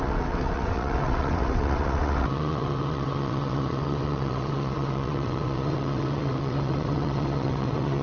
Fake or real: fake